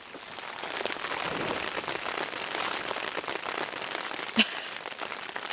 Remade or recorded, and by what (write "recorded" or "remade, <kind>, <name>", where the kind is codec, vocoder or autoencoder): recorded